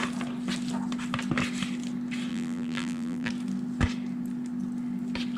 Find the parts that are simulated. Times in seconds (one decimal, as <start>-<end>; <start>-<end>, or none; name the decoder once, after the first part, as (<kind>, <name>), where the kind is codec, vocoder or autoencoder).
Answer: 2.3-3.3 (vocoder, BigVGAN v2)